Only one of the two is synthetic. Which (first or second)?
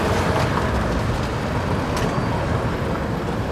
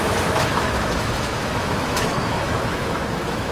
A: second